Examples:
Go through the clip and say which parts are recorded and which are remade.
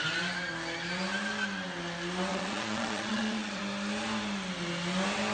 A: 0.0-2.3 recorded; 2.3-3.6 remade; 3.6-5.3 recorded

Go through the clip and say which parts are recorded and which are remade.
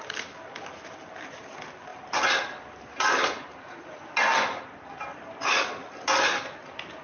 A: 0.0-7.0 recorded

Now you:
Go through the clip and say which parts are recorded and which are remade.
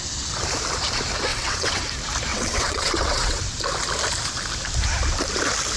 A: 0.0-1.3 recorded; 1.3-1.8 remade; 1.8-2.3 recorded; 2.3-3.4 remade; 3.4-5.8 recorded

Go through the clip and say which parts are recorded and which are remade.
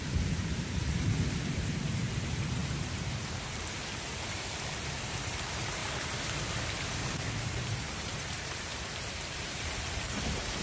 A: 0.0-5.8 remade; 5.8-7.4 recorded; 7.4-10.6 remade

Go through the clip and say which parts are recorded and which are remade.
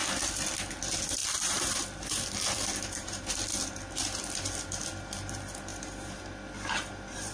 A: 0.0-1.2 recorded; 1.2-3.3 remade; 3.3-7.3 recorded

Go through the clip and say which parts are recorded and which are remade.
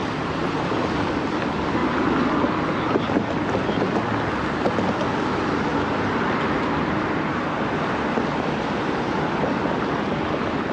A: 0.0-10.7 recorded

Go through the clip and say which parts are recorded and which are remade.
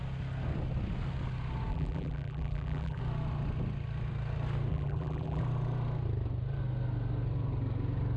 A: 0.0-1.7 recorded; 1.7-3.0 remade; 3.0-4.7 recorded; 4.7-5.4 remade; 5.4-8.2 recorded